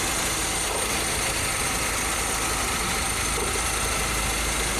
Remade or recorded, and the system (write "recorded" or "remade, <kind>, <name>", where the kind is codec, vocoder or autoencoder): recorded